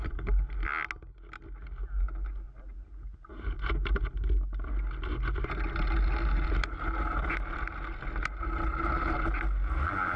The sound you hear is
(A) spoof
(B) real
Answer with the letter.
B